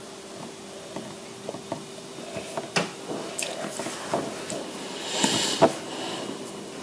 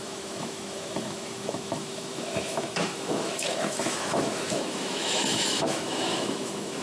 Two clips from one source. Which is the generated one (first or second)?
second